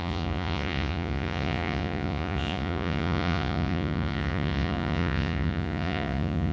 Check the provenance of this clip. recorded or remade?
remade